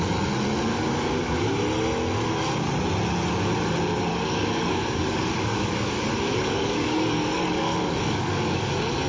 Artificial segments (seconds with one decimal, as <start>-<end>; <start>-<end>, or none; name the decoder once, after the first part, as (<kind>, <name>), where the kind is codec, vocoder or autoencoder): 0.7-1.6 (codec, DAC); 4.1-8.7